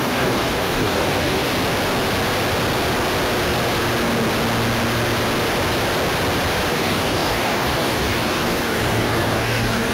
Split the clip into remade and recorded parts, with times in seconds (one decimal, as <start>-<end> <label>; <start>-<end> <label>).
0.0-1.5 remade; 1.5-6.7 recorded; 6.7-9.9 remade